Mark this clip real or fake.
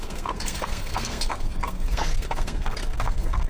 fake